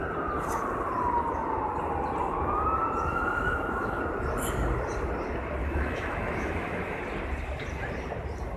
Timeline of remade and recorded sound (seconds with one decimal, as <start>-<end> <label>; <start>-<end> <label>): 0.0-3.1 recorded; 3.1-4.0 remade; 4.0-5.6 recorded; 5.6-7.0 remade; 7.0-8.6 recorded